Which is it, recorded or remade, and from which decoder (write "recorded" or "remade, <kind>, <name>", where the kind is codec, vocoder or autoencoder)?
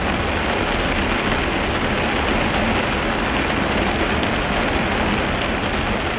recorded